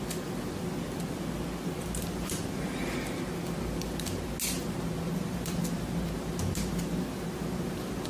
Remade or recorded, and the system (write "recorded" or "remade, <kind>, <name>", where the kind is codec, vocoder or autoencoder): recorded